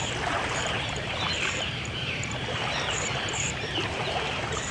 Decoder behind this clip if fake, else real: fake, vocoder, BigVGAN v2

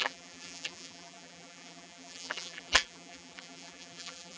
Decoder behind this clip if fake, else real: fake, vocoder, BigVGAN v2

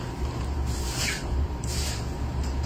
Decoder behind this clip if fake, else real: fake, vocoder, BigVGAN v2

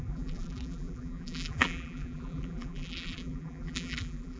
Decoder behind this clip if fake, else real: fake, vocoder, BigVGAN v2